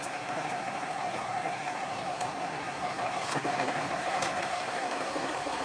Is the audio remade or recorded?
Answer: remade